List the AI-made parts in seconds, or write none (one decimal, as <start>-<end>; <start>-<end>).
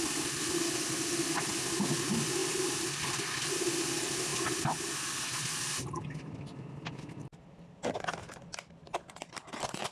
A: 2.4-3.2